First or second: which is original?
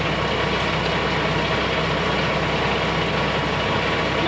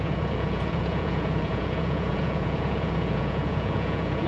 first